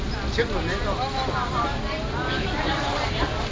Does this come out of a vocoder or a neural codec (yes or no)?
no